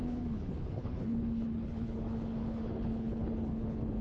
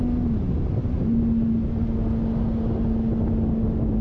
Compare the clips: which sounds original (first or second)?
second